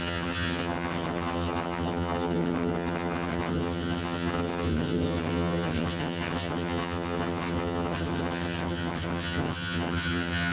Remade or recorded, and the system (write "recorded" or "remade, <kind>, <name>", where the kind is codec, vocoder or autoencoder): remade, vocoder, HiFi-GAN